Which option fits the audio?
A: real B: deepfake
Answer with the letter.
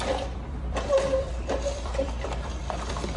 B